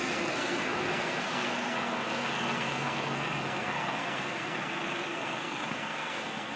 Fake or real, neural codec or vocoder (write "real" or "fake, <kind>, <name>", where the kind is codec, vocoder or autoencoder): fake, codec, SNAC